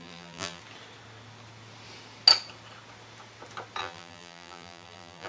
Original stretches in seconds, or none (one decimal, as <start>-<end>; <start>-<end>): 0.6-3.8